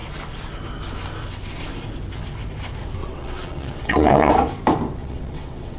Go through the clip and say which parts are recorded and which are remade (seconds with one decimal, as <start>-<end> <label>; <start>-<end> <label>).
0.0-3.0 recorded; 3.0-4.3 remade; 4.3-5.0 recorded; 5.0-5.8 remade

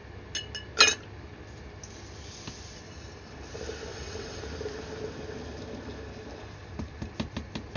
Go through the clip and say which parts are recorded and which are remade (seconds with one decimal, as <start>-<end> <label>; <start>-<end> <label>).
0.0-3.9 recorded; 3.9-4.4 remade; 4.4-7.8 recorded

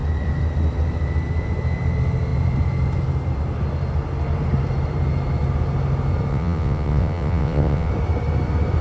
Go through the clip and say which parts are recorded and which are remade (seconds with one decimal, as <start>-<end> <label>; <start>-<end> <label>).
0.0-6.3 recorded; 6.3-7.9 remade; 7.9-8.8 recorded

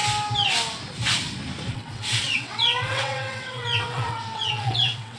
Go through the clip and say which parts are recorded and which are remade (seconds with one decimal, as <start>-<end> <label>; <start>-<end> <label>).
0.0-1.7 recorded; 1.7-5.2 remade

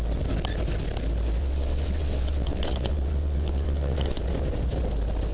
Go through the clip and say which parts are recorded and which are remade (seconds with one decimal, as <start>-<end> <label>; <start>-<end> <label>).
0.0-1.4 recorded; 1.4-4.2 remade; 4.2-5.3 recorded